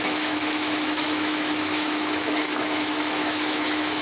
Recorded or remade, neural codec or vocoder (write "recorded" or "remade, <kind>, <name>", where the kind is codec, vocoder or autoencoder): remade, autoencoder, DAC-VAE